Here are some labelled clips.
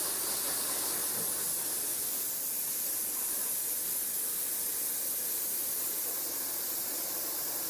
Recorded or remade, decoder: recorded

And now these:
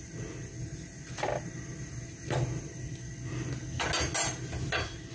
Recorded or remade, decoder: recorded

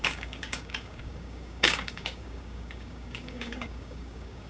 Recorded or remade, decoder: remade, codec, DAC